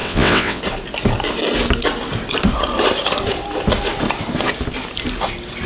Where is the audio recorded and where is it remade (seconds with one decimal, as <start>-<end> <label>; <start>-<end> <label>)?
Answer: 0.0-0.6 remade; 0.6-5.7 recorded